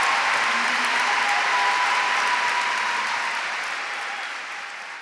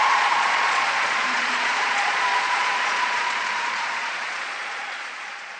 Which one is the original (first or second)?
first